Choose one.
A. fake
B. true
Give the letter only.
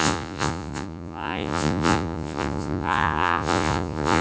A